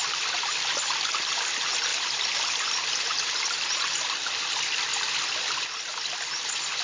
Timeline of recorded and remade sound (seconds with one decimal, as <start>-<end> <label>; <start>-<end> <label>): 0.0-6.8 recorded

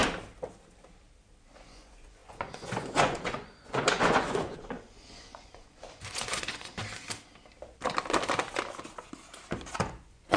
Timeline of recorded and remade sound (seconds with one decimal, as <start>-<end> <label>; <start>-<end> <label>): 0.0-1.4 recorded; 1.4-6.8 remade; 6.8-9.8 recorded; 9.8-10.4 remade